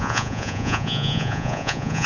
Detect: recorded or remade remade